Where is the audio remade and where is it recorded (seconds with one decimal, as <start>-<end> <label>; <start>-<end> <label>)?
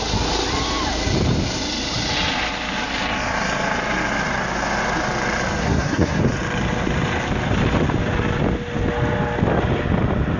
0.0-5.6 recorded; 5.6-6.2 remade; 6.2-10.4 recorded